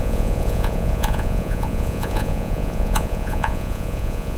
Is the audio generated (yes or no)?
yes